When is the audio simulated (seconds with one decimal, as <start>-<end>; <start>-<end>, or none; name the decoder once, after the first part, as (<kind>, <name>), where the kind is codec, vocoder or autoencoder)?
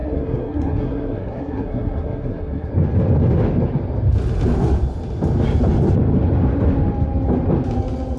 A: 0.0-2.7 (codec, SNAC)